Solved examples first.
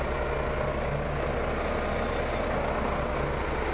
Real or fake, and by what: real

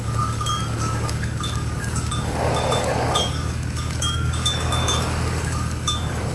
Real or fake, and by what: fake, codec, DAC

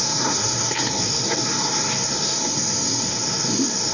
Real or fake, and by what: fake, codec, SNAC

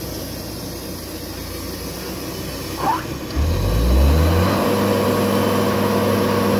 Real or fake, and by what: real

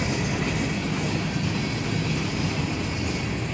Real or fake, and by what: real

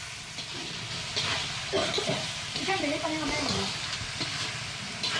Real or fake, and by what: real